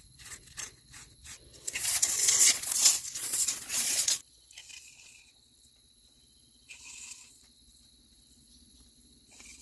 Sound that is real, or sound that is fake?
fake